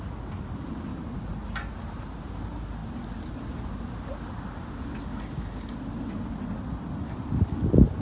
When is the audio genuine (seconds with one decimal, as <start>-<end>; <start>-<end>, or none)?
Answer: 0.0-8.0